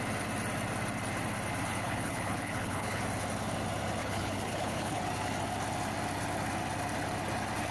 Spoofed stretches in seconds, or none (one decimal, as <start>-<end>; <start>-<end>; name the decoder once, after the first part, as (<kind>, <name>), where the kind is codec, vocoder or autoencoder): 1.7-3.0 (codec, HILCodec); 4.0-5.0